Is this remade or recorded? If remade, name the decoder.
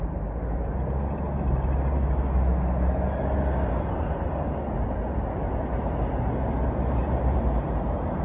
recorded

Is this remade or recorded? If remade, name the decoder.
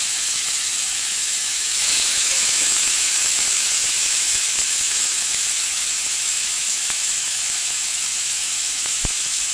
remade, autoencoder, DAC-VAE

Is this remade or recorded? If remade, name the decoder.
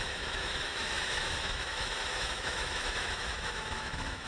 remade, autoencoder, DAC-VAE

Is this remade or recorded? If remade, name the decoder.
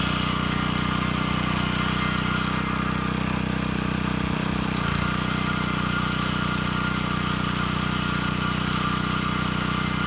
recorded